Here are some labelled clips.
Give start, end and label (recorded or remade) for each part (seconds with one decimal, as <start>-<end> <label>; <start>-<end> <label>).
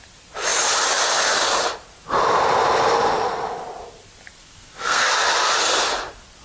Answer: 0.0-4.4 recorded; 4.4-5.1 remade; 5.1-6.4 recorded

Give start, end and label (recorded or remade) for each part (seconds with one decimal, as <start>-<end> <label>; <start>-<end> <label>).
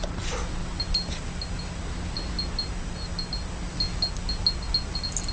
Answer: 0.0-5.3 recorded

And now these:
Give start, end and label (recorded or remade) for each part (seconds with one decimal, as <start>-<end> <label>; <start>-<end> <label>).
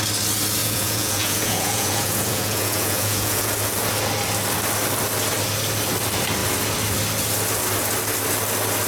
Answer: 0.0-0.6 recorded; 0.6-3.5 remade; 3.5-8.9 recorded